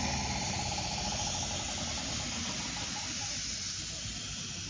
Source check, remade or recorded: recorded